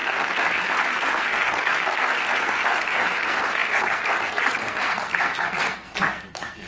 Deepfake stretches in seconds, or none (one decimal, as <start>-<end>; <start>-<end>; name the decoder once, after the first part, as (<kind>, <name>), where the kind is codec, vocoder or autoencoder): 0.0-6.7 (codec, SNAC)